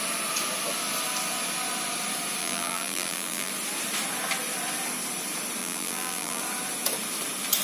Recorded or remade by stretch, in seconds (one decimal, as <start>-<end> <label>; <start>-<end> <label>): 0.0-2.4 recorded; 2.4-3.5 remade; 3.5-5.6 recorded; 5.6-6.4 remade; 6.4-7.6 recorded